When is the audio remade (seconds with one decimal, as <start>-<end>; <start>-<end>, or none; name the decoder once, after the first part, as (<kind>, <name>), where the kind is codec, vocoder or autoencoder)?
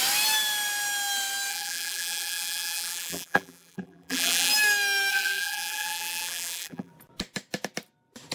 1.5-4.5 (vocoder, BigVGAN v2); 5.1-6.9